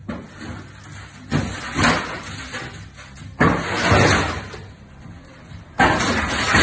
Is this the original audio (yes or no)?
yes